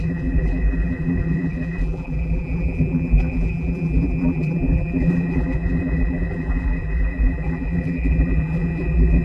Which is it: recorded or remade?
remade